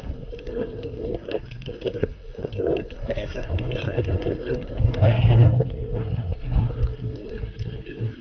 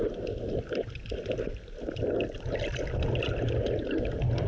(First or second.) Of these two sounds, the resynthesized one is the first